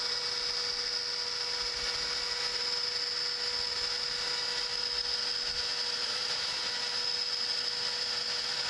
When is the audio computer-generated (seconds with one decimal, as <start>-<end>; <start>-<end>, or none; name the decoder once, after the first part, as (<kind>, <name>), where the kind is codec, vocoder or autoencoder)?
6.0-6.6 (vocoder, Vocos)